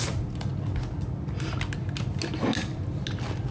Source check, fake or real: real